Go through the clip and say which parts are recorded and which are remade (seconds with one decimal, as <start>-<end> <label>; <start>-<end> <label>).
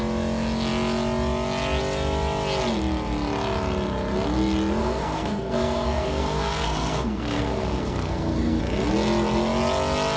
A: 0.0-4.8 recorded; 4.8-8.6 remade; 8.6-10.2 recorded